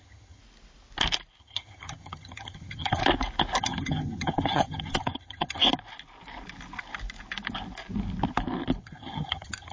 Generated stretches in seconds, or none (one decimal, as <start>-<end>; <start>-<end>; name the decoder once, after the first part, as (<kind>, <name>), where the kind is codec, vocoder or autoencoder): 0.0-0.4 (vocoder, HiFi-GAN); 1.4-3.0; 3.6-5.6; 8.8-9.7